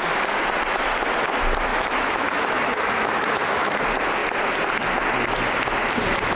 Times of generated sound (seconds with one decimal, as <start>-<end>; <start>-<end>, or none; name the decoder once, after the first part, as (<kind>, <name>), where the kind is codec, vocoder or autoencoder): 1.7-3.8 (autoencoder, DAC-VAE)